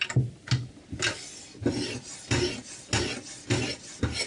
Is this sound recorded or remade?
recorded